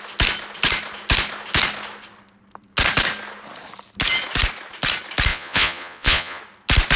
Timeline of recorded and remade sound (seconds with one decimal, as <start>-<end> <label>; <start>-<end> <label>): 0.0-5.3 recorded; 5.3-6.4 remade; 6.4-7.0 recorded